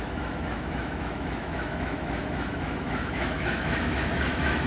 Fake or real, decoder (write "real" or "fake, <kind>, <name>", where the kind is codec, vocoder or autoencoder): fake, autoencoder, DAC-VAE